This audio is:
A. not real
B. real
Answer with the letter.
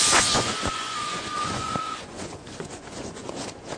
A